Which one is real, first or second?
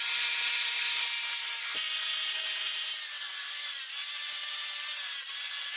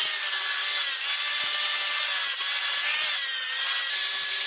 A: second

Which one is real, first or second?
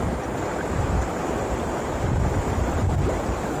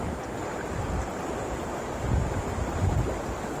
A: second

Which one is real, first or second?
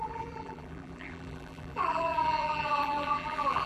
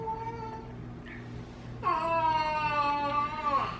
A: second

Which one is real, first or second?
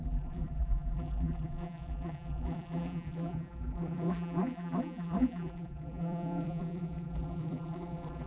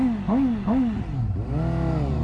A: second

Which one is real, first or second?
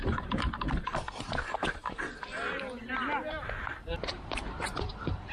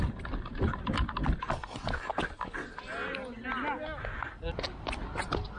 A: second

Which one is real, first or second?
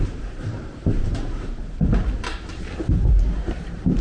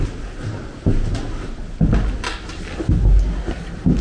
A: second